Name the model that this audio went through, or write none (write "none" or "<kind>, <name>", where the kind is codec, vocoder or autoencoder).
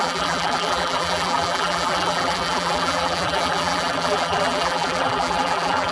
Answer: vocoder, BigVGAN v2